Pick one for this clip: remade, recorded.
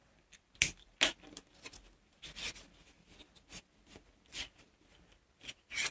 recorded